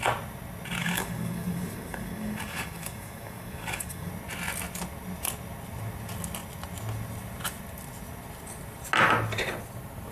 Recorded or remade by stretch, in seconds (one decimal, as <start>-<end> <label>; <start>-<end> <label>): 0.0-0.8 recorded; 0.8-4.1 remade; 4.1-10.1 recorded